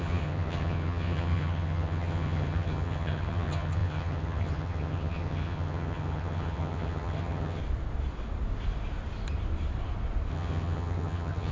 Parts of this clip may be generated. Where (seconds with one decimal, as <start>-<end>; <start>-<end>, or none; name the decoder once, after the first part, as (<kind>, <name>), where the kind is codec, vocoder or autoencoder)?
0.0-7.6 (vocoder, HiFi-GAN); 10.3-11.5